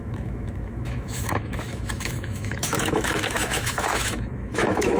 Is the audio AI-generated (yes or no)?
yes